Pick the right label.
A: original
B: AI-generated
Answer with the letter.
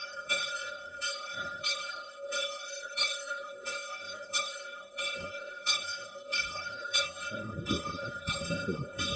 B